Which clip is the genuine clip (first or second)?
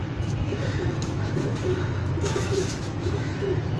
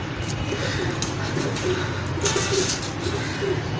second